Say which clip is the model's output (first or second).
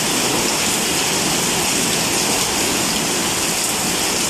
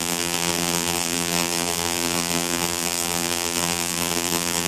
second